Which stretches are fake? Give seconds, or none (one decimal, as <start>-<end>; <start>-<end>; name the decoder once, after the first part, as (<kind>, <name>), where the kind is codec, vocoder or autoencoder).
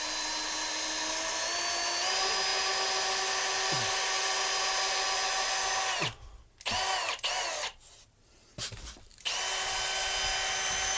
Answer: none